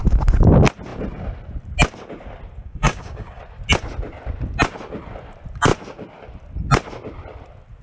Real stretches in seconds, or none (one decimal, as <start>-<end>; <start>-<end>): 0.0-2.6; 3.4-7.8